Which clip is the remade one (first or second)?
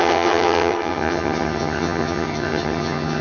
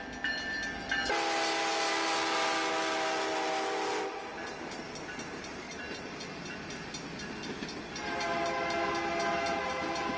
first